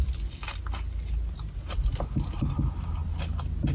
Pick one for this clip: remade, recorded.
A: recorded